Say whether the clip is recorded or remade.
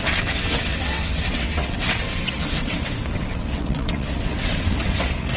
remade